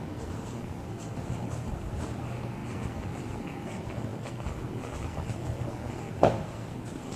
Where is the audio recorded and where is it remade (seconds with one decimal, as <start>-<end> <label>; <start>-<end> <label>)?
0.0-7.2 remade